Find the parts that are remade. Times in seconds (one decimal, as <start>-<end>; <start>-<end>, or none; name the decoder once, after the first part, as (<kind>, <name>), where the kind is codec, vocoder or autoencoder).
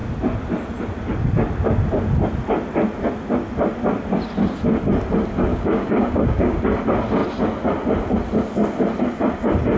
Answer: 5.5-6.6 (codec, DAC)